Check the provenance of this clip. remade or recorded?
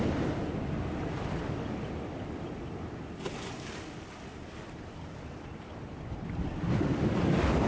recorded